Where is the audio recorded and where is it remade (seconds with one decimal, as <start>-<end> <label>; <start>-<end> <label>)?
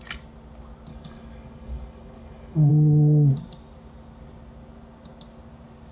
0.0-0.9 recorded; 0.9-2.7 remade; 2.7-5.9 recorded